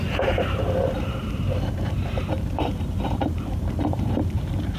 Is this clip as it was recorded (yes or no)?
no